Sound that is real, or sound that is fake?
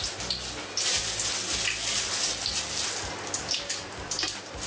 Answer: real